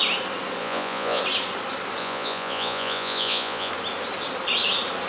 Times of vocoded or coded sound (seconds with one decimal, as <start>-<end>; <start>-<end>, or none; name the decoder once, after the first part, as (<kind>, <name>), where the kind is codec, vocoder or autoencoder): 0.6-1.2 (vocoder, Vocos); 2.0-3.7